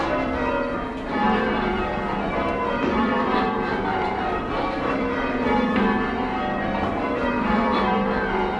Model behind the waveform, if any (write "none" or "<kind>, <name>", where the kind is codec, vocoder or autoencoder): vocoder, BigVGAN v2